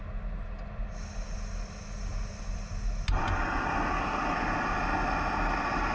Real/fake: real